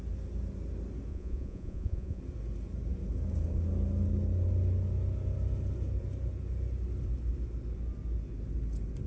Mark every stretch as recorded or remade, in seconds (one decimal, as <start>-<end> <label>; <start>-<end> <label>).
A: 0.0-1.1 recorded; 1.1-2.2 remade; 2.2-9.1 recorded